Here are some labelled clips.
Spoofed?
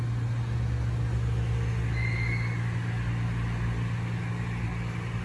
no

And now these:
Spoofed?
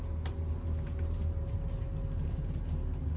no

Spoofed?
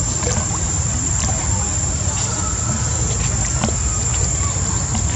no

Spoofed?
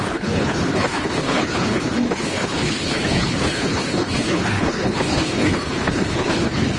yes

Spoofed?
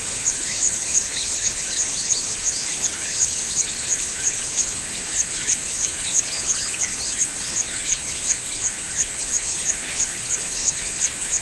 yes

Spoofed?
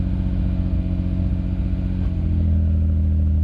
no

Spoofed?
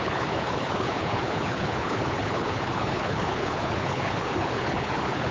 yes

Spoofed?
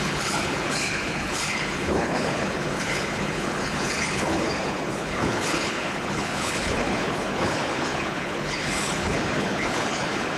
yes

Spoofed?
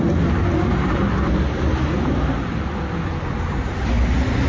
no